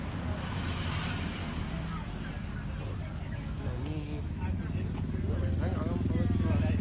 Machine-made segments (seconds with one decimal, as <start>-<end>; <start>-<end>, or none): 1.4-2.1; 3.0-4.2